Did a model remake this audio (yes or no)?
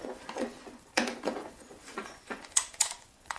yes